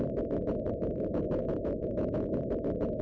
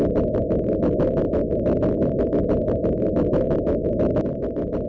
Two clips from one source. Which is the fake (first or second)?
first